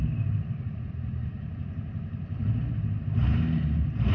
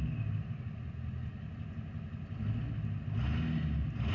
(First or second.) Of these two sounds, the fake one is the first